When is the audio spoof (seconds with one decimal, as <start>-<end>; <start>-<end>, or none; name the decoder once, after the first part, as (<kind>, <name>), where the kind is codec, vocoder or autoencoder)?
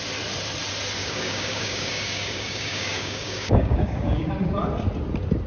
1.0-4.3 (codec, DAC)